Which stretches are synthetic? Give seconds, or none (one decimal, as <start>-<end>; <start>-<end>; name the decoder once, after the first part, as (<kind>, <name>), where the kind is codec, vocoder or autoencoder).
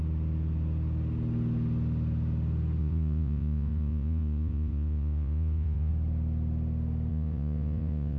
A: 2.8-5.9 (vocoder, Vocos); 7.1-8.2